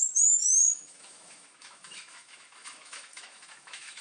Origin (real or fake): fake